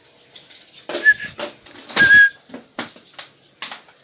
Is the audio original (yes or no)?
yes